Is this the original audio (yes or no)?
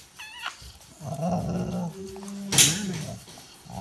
yes